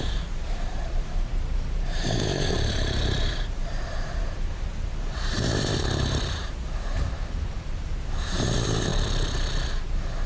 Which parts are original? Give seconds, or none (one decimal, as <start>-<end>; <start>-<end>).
8.9-9.7